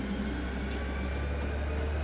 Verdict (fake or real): real